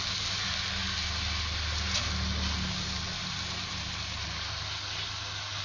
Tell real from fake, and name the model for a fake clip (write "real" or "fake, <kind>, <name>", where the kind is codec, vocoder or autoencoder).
real